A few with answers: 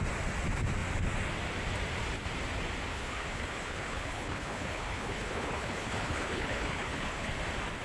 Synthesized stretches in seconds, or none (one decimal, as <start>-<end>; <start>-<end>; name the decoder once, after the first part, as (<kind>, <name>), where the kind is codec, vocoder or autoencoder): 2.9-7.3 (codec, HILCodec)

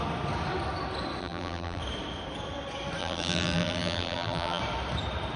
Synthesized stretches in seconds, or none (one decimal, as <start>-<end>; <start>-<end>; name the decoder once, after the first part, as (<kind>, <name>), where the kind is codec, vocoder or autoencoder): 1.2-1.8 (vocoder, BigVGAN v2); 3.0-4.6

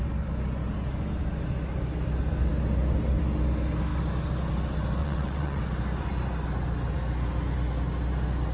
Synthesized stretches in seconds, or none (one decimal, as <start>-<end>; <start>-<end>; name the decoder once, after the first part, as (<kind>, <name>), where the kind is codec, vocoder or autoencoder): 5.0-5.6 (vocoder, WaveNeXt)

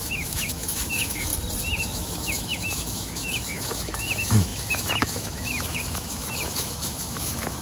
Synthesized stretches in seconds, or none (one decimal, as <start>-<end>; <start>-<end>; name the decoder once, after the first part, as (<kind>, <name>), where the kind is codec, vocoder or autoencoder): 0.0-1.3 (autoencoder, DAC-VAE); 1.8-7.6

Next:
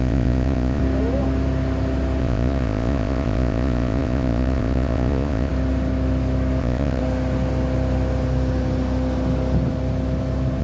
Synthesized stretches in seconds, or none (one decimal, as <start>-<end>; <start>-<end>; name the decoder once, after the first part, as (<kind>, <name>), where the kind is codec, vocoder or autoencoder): 0.0-0.8 (vocoder, Vocos); 2.2-5.5; 6.6-7.0

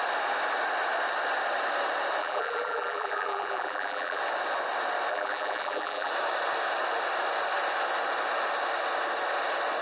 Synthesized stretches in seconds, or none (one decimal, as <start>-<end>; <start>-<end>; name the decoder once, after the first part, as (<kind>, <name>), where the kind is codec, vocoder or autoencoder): 2.2-4.2 (vocoder, BigVGAN v2); 5.1-6.1